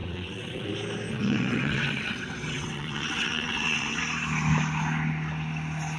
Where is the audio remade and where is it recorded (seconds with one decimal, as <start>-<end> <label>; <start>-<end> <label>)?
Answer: 0.0-0.7 remade; 0.7-1.1 recorded; 1.1-4.0 remade; 4.0-6.0 recorded